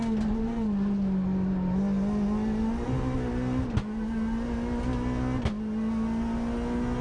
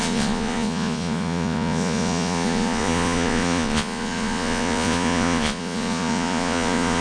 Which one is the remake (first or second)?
second